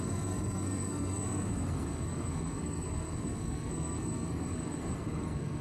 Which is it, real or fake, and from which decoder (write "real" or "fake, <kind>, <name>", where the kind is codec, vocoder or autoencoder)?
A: fake, codec, SNAC